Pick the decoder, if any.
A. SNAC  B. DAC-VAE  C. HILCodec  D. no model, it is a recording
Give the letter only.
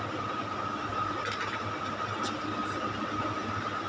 D